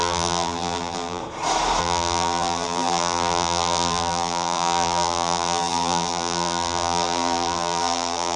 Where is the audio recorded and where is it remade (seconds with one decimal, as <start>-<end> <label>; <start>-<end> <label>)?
0.0-1.2 remade; 1.2-1.8 recorded; 1.8-8.4 remade